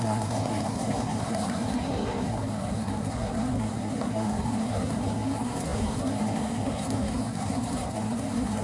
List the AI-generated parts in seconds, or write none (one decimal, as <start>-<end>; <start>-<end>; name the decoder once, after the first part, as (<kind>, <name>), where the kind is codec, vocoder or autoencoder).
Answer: 0.0-8.6 (codec, SNAC)